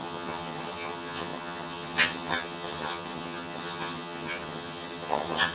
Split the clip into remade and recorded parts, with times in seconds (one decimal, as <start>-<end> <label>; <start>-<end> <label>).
0.0-5.5 remade